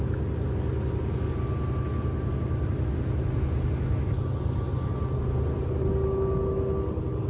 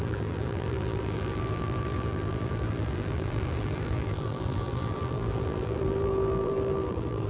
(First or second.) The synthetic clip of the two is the second